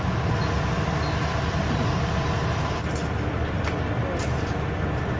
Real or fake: real